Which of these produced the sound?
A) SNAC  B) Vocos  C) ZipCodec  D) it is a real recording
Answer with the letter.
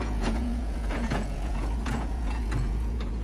B